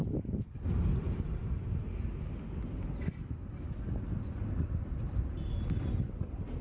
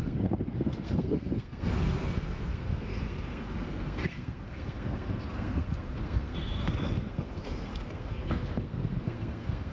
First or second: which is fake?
second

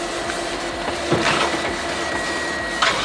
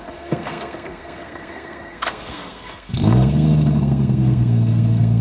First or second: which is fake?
second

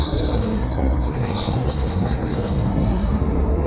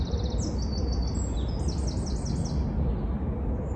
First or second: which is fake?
first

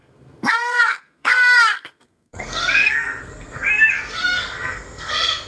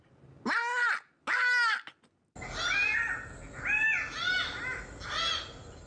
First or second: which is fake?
first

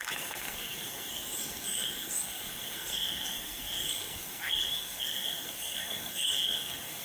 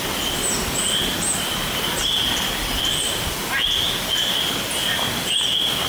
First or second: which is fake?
first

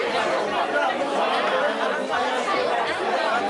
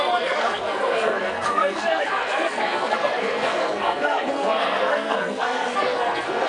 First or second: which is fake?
second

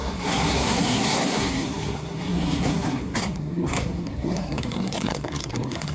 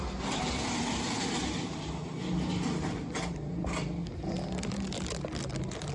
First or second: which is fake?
first